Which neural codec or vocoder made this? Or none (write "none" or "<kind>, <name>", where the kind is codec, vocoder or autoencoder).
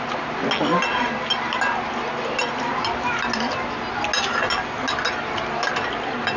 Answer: none